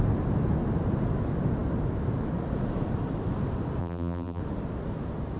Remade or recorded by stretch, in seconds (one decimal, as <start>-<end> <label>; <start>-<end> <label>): 0.0-3.8 recorded; 3.8-4.4 remade; 4.4-5.4 recorded